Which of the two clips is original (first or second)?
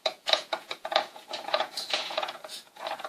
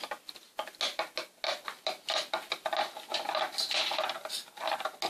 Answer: second